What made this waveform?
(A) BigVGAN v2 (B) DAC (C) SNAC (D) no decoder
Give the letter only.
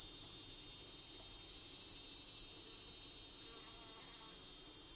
D